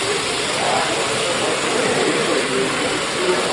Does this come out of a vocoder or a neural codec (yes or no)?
no